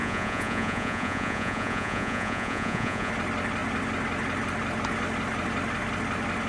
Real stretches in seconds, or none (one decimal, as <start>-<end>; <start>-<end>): 3.1-6.5